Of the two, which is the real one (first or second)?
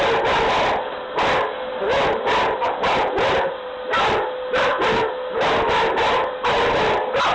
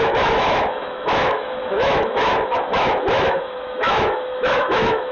first